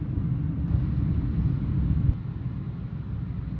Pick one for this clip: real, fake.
real